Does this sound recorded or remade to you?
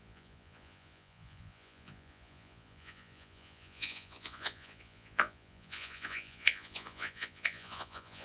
remade